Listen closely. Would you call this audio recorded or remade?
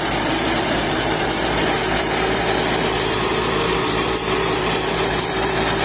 remade